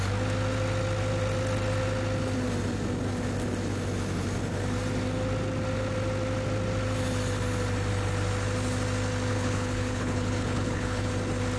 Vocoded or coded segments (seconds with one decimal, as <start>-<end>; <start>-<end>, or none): 9.3-11.1